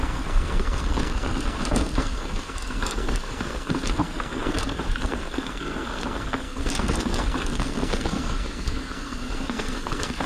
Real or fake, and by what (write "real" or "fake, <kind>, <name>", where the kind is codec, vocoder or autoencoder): fake, codec, SNAC